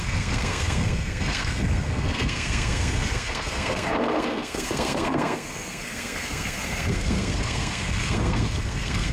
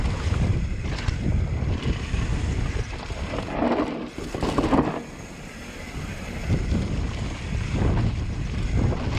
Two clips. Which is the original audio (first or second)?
second